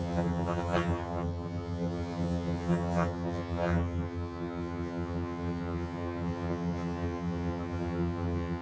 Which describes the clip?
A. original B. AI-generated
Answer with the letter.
B